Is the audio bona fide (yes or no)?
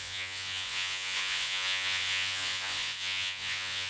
no